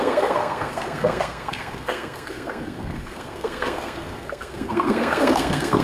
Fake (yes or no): yes